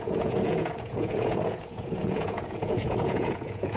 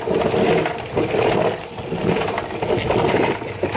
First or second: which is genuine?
second